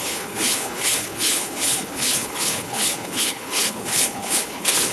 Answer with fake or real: fake